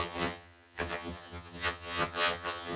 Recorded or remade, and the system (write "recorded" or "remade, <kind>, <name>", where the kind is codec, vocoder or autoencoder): remade, vocoder, HiFi-GAN